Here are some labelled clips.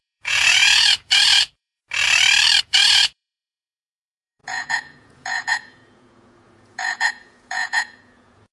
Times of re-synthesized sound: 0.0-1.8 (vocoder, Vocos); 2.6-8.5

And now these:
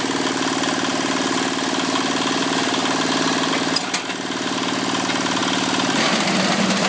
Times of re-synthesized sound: none